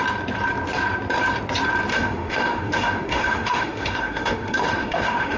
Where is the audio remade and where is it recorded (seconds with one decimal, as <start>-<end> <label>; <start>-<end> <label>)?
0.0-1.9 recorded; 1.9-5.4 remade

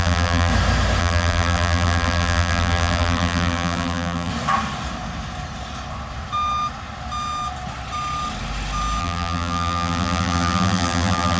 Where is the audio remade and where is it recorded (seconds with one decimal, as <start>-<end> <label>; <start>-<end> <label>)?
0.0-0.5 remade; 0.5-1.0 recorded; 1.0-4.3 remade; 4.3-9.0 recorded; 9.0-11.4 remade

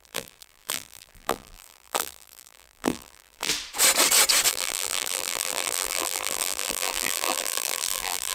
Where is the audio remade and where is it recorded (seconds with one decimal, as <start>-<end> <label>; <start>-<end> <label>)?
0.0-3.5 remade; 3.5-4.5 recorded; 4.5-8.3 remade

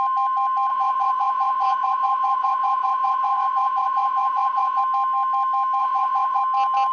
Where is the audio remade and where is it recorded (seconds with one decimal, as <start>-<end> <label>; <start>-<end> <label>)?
0.0-0.7 recorded; 0.7-4.8 remade; 4.8-5.8 recorded; 5.8-6.4 remade; 6.4-6.9 recorded

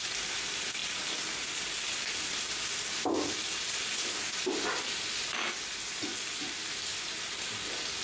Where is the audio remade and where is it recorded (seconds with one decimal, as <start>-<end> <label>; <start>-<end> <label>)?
0.0-8.0 recorded

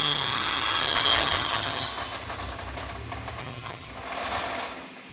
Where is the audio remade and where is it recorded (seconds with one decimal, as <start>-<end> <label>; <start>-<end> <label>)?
0.0-1.9 remade; 1.9-3.4 recorded; 3.4-3.9 remade; 3.9-5.1 recorded

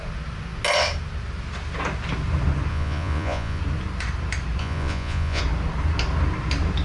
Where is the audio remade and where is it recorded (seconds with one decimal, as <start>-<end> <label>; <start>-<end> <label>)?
0.0-2.7 recorded; 2.7-3.6 remade; 3.6-4.6 recorded; 4.6-5.4 remade; 5.4-6.8 recorded